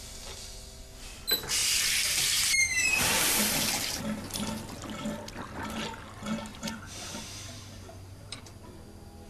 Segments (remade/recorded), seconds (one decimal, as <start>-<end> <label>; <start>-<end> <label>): 0.0-1.6 recorded; 1.6-4.0 remade; 4.0-6.5 recorded; 6.5-8.4 remade; 8.4-9.3 recorded